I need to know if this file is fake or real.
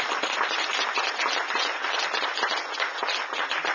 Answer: real